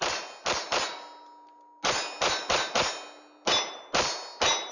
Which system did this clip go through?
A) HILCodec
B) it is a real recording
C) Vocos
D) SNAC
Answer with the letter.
B